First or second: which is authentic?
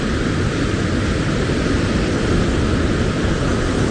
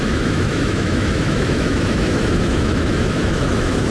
first